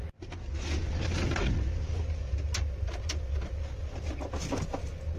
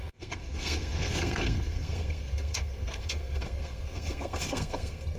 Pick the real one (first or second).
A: first